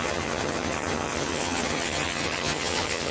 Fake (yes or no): yes